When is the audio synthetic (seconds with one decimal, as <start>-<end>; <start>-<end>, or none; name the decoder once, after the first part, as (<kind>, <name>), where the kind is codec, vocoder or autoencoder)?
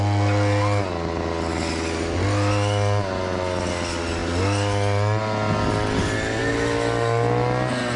none